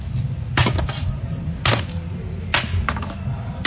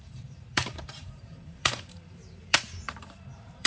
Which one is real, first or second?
first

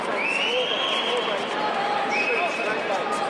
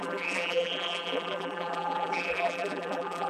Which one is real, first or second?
first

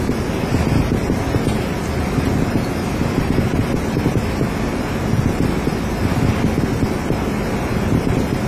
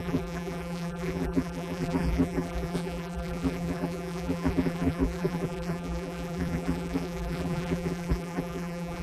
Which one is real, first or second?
first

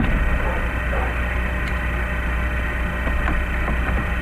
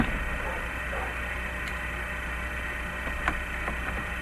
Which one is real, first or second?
second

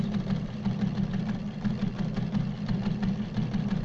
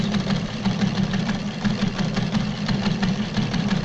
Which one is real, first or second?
first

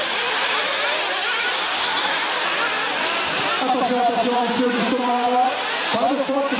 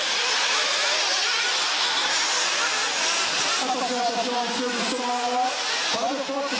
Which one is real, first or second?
second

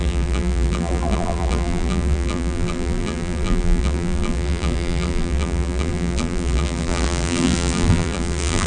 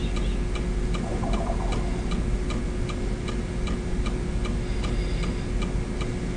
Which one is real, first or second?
second